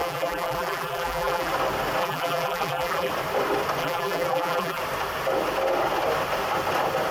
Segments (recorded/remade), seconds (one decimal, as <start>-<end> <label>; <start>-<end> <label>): 0.0-1.5 remade; 1.5-2.0 recorded; 2.0-3.1 remade; 3.1-3.8 recorded; 3.8-4.8 remade; 4.8-7.1 recorded